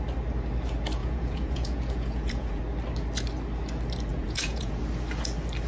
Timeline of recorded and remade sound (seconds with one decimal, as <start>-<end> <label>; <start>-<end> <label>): 0.0-1.0 recorded; 1.0-2.6 remade; 2.6-4.1 recorded; 4.1-4.8 remade; 4.8-5.7 recorded